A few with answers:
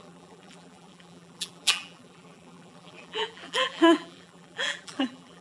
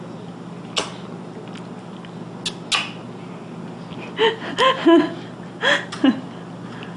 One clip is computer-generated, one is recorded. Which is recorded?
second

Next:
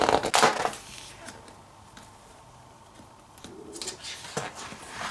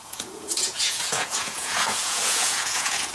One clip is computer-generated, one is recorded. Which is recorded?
first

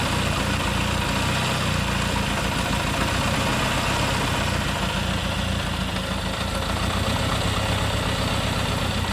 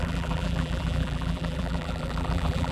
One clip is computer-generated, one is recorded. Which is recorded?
first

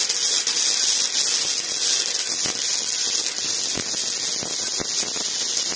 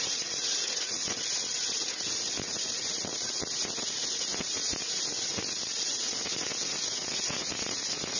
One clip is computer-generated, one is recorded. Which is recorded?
first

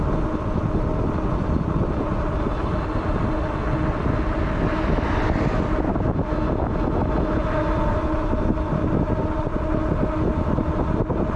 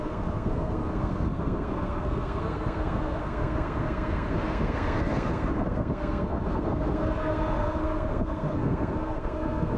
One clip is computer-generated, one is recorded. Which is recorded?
first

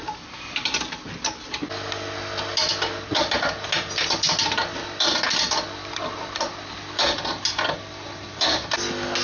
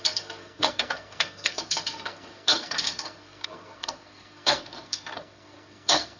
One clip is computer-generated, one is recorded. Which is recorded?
first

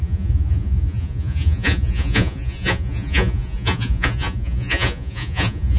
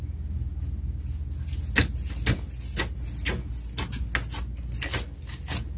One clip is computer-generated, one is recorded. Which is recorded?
second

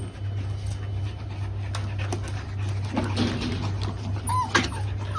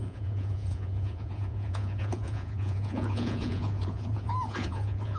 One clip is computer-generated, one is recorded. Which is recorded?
first